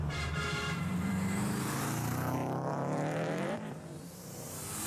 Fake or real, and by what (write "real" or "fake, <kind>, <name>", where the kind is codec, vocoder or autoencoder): fake, vocoder, BigVGAN v2